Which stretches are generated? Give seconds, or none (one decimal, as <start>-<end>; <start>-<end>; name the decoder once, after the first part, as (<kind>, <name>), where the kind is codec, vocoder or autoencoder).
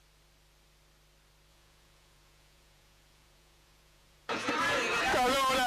1.5-4.5 (vocoder, Vocos)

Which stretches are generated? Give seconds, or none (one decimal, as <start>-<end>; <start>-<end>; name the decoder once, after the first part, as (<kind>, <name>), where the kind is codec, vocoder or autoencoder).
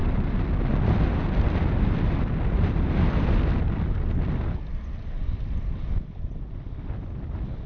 none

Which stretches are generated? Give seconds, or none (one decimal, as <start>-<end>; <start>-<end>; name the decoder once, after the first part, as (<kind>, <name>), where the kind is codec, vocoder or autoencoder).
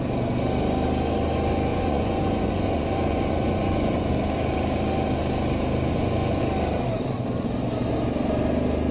1.7-4.1 (vocoder, Vocos); 5.9-6.4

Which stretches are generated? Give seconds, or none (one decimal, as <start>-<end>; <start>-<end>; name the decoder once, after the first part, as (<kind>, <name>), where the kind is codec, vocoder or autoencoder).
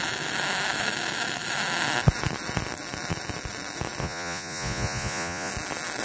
4.0-5.5 (vocoder, Vocos)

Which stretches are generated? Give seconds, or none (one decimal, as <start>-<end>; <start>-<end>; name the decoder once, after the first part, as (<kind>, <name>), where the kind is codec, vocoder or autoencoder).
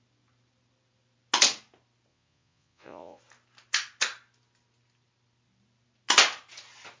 2.1-3.2 (vocoder, Vocos)